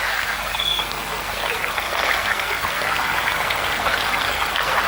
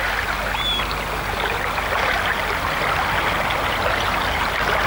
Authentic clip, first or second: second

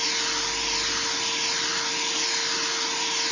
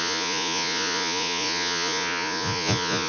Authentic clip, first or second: first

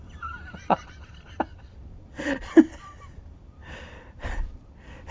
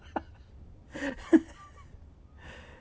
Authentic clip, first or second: second